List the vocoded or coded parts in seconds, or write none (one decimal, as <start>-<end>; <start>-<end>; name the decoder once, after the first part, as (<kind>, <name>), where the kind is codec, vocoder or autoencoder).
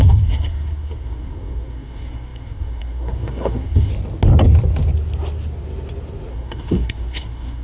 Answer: 0.0-3.9 (codec, SNAC); 6.3-7.6